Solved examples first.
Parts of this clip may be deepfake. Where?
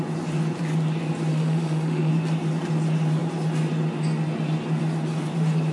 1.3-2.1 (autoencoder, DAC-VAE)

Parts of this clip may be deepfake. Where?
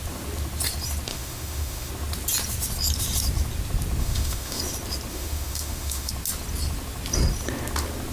1.1-1.9 (autoencoder, DAC-VAE); 4.0-4.6; 5.1-6.1